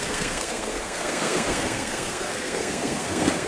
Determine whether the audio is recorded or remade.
remade